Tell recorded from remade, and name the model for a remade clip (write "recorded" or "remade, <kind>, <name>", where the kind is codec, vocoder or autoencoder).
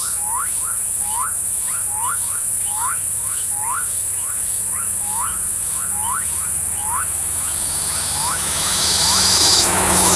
remade, autoencoder, DAC-VAE